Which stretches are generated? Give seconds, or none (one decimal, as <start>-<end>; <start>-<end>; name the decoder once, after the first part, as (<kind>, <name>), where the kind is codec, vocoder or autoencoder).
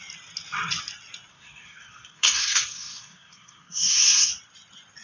1.3-4.3 (codec, SNAC)